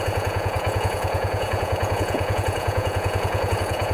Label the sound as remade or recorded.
remade